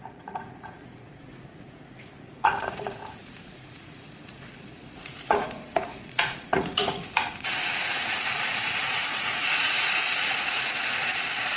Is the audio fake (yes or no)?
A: yes